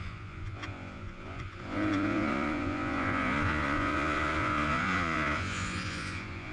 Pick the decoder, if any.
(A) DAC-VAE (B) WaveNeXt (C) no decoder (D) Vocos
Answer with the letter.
D